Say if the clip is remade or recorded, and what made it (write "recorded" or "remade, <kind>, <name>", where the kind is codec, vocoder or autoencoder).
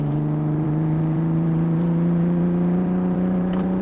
remade, vocoder, BigVGAN v2